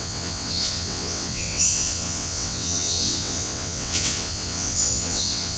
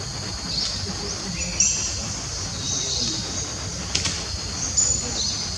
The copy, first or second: first